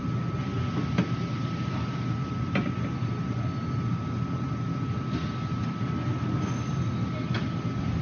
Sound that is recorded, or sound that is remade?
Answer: recorded